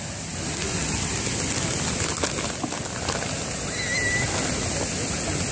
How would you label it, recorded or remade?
recorded